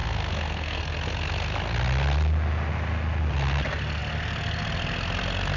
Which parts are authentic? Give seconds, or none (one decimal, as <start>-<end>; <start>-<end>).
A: 0.8-5.6